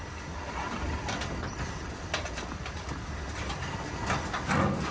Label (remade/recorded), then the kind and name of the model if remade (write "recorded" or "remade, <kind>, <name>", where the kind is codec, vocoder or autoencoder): recorded